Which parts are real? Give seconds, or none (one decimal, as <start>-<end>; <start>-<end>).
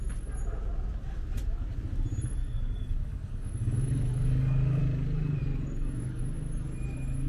0.0-2.4; 4.8-5.5; 6.2-7.3